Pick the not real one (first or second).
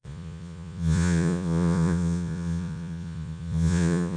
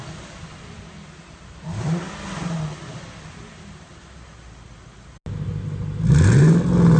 first